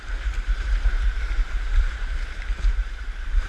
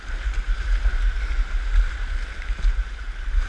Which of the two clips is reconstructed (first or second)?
first